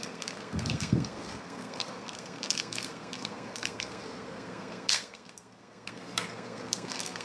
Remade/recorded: remade